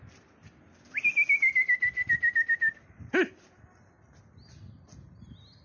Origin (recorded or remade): recorded